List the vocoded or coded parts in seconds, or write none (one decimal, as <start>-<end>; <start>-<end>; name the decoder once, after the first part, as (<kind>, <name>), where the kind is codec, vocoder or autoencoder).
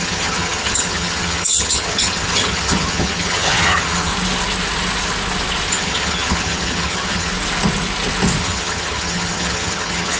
0.0-4.1 (vocoder, HiFi-GAN); 5.7-7.3; 8.4-10.2